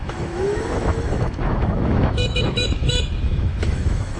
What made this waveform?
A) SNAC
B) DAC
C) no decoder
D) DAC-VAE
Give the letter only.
D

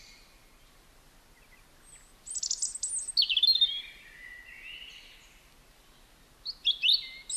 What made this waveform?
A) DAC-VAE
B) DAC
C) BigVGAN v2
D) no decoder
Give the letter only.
D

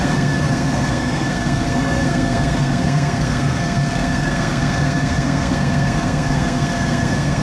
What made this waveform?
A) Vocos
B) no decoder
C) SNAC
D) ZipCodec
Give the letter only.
C